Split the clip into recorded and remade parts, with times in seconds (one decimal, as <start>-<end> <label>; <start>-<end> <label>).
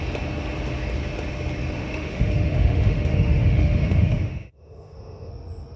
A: 0.0-1.8 recorded; 1.8-5.3 remade; 5.3-5.8 recorded